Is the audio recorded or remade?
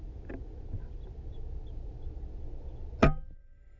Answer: recorded